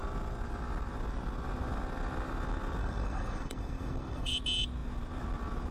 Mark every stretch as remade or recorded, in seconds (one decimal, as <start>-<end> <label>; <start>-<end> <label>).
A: 0.0-2.8 recorded; 2.8-4.3 remade; 4.3-5.7 recorded